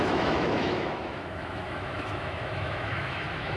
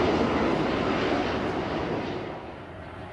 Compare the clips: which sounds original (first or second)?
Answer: second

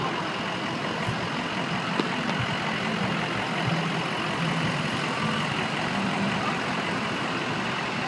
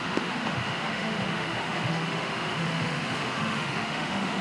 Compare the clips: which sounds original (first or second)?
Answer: first